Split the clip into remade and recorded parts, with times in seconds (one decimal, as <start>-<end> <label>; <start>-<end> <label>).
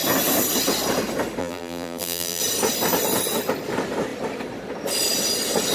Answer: 0.0-1.4 recorded; 1.4-2.4 remade; 2.4-5.7 recorded